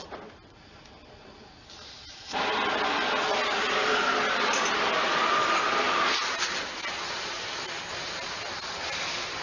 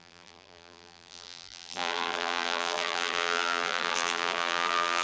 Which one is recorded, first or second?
first